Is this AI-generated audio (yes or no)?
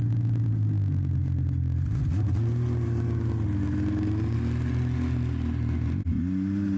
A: no